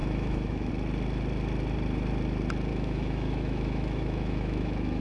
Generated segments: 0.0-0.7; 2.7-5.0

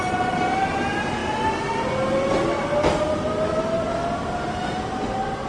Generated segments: none